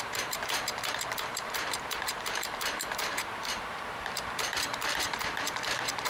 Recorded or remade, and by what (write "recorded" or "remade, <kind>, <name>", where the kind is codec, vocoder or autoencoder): remade, vocoder, BigVGAN v2